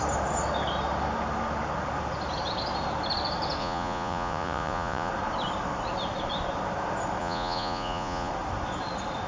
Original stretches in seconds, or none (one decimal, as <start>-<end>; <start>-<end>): 0.0-3.6; 5.1-7.2; 8.3-9.3